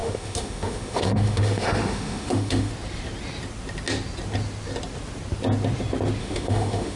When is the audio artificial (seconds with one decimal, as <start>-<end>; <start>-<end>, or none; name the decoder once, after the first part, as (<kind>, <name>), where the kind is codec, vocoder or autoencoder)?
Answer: 0.0-2.7 (autoencoder, DAC-VAE); 6.2-7.0